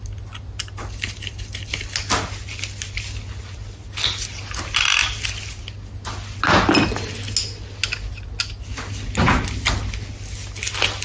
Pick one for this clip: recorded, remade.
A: recorded